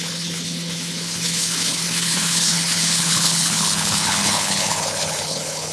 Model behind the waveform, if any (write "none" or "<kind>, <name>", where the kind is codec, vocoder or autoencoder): codec, HILCodec